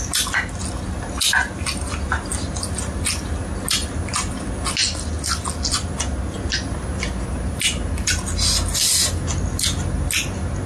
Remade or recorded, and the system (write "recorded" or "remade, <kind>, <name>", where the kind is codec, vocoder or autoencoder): recorded